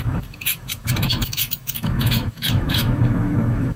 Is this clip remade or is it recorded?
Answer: remade